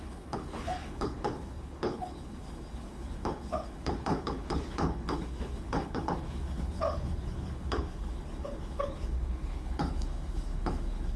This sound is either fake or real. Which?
fake